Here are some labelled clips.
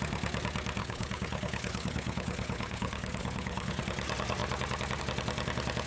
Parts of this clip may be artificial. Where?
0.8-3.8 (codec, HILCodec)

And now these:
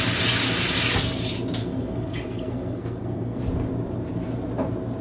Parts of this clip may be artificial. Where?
1.6-3.4 (codec, SNAC)

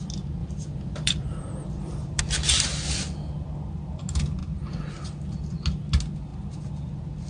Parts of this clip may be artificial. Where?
0.4-2.2 (vocoder, BigVGAN v2)

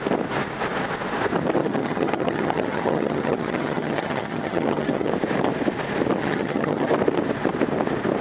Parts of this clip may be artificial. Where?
1.6-5.1 (vocoder, HiFi-GAN); 6.2-6.9